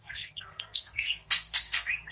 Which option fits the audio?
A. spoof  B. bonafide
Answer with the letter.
A